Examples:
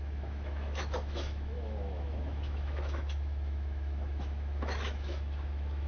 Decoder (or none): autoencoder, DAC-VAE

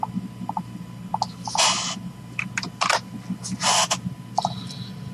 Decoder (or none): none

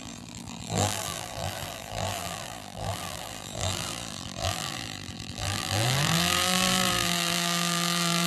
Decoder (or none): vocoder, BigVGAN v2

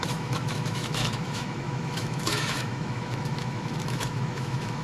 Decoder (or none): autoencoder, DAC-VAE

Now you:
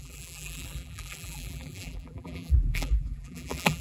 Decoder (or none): vocoder, BigVGAN v2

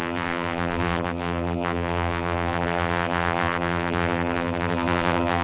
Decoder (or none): vocoder, BigVGAN v2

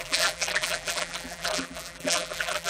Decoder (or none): vocoder, BigVGAN v2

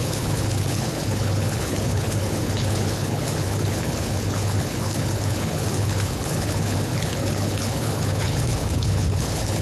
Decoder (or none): codec, HILCodec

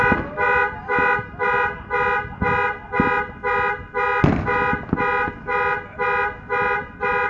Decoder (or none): none